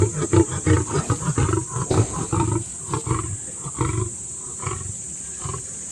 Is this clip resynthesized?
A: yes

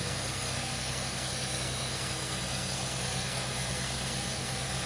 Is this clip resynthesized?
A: yes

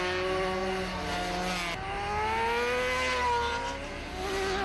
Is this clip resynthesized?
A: no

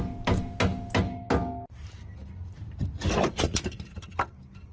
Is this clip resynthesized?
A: no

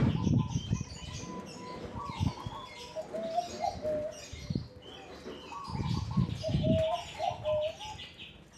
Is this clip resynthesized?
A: no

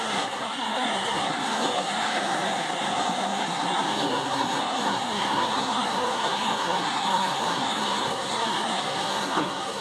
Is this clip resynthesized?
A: yes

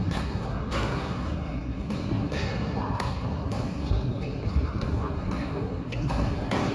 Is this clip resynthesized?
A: yes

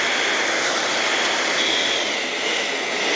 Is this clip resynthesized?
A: no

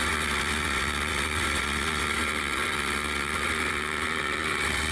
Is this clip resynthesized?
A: yes